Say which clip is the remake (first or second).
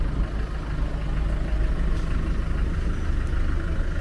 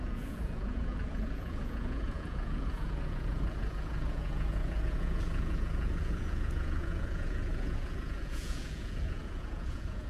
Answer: second